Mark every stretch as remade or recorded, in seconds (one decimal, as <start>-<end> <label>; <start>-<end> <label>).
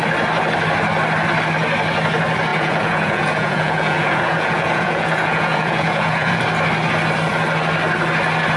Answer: 0.0-2.5 recorded; 2.5-6.4 remade; 6.4-8.6 recorded